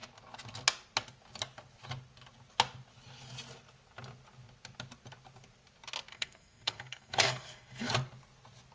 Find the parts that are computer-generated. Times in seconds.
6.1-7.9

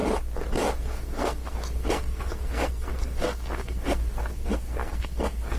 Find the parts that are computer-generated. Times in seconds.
0.8-5.6

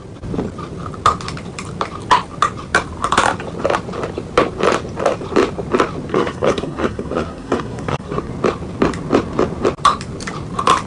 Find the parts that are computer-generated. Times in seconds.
6.1-8.3

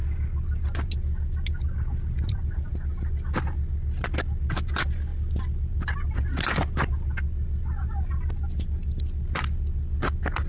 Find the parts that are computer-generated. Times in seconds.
none